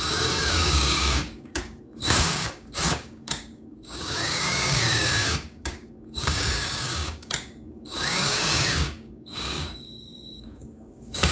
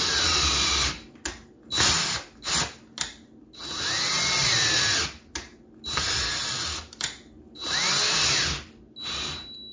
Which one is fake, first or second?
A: first